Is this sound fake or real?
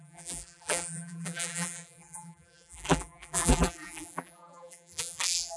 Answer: fake